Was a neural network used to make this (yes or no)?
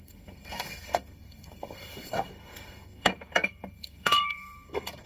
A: yes